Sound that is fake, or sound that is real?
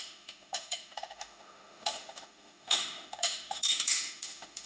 fake